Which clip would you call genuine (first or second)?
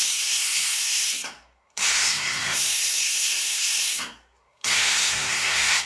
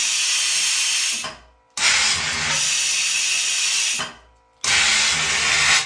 second